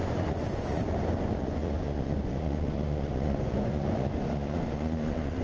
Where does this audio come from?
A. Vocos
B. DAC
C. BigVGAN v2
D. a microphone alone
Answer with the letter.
A